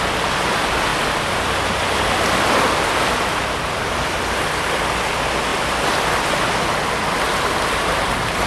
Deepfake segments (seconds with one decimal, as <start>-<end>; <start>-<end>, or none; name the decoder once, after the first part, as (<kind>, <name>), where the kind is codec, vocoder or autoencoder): none